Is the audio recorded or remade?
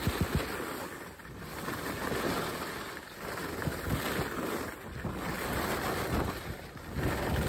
recorded